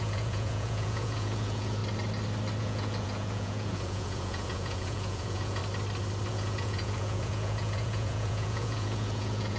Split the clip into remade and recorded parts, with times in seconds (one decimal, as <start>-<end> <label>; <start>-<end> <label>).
0.0-1.8 remade; 1.8-2.6 recorded; 2.6-5.6 remade; 5.6-6.3 recorded; 6.3-9.6 remade